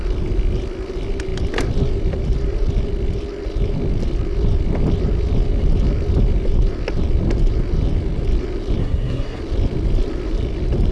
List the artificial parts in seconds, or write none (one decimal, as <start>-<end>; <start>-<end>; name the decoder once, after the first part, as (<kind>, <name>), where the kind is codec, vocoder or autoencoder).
8.8-9.4 (codec, SNAC)